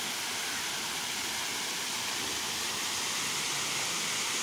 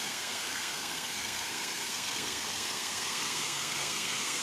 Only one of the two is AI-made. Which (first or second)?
second